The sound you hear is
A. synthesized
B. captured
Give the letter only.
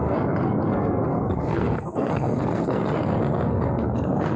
A